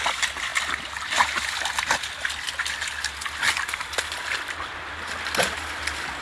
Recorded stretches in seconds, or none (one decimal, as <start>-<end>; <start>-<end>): 0.0-6.2